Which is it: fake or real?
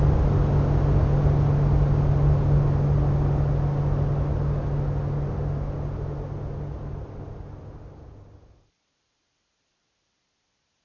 real